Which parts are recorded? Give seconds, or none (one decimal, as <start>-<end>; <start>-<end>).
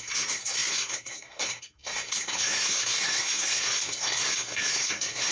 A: none